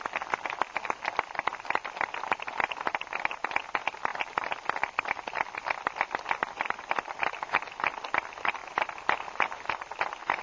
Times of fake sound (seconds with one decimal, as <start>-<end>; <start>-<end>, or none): none